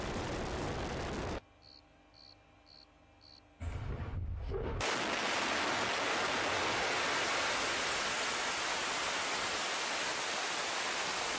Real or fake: real